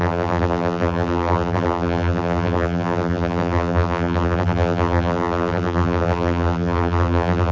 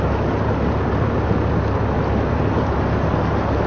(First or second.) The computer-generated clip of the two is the first